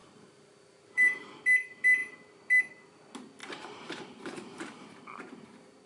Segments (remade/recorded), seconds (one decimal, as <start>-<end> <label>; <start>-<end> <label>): 0.0-1.2 remade; 1.2-3.4 recorded; 3.4-5.9 remade